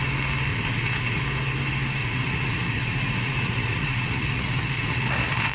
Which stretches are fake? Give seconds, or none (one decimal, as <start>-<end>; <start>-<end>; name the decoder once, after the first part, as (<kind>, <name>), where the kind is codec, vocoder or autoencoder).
0.5-1.2 (vocoder, Vocos); 2.0-5.5